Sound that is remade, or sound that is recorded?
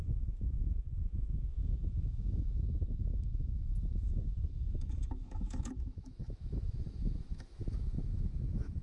remade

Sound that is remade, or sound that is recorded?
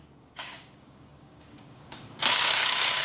remade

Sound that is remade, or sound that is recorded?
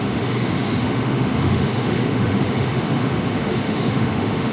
remade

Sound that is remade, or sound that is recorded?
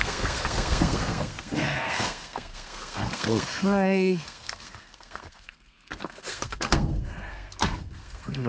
remade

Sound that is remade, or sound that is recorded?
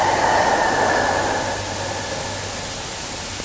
recorded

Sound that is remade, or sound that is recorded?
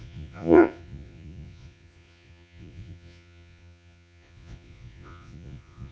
remade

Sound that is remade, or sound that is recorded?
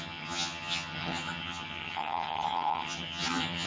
remade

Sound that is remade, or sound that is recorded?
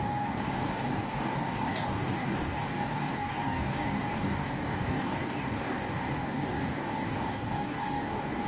remade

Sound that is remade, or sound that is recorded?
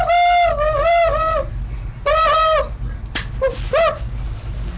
recorded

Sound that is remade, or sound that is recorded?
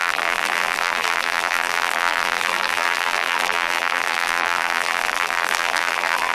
remade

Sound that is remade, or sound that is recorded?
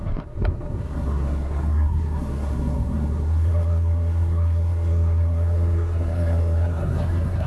remade